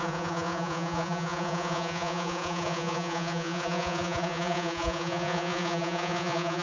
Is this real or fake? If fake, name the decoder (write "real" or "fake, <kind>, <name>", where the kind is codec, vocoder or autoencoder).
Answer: fake, vocoder, Vocos